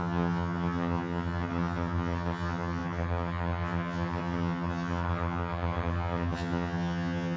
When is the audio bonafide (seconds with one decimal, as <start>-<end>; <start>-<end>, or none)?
none